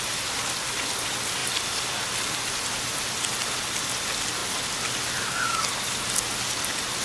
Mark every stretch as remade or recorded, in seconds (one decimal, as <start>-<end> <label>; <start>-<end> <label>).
0.0-7.0 recorded